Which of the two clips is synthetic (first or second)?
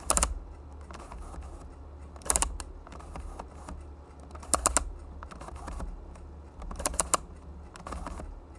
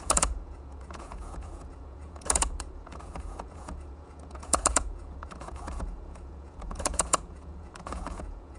second